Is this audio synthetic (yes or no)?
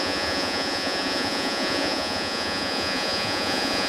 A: yes